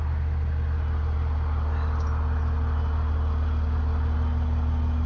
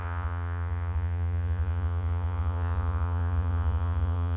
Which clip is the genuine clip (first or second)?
first